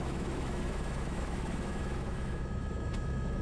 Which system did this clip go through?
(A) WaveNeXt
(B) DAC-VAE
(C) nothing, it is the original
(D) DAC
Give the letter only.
B